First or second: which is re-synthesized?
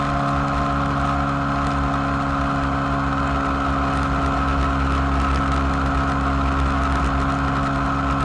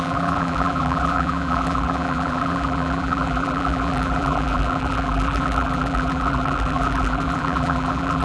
second